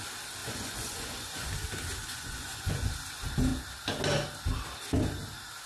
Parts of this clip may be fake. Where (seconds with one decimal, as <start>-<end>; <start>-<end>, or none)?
0.4-1.5; 2.0-2.9